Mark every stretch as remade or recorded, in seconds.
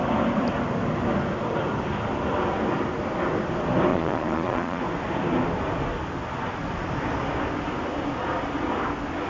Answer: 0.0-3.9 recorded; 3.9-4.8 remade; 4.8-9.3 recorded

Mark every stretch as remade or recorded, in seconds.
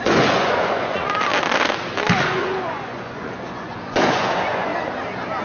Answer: 0.0-1.3 remade; 1.3-2.2 recorded; 2.2-4.7 remade; 4.7-5.4 recorded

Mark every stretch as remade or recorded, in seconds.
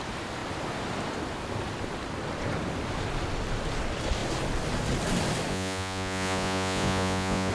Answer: 0.0-5.5 recorded; 5.5-7.5 remade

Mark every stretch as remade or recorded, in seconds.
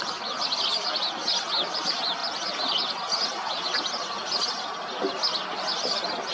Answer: 0.0-6.3 recorded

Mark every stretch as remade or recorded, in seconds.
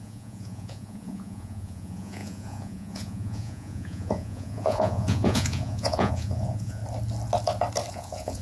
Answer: 0.0-6.8 remade; 6.8-7.9 recorded; 7.9-8.4 remade